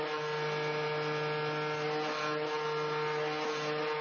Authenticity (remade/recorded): recorded